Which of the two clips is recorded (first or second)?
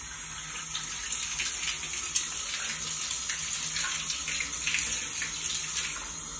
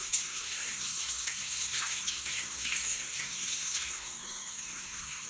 first